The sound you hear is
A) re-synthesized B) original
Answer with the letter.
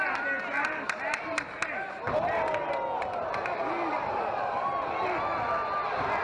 B